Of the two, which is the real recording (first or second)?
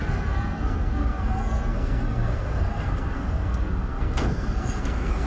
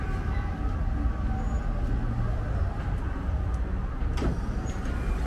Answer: second